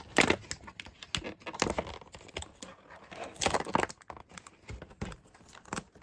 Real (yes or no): yes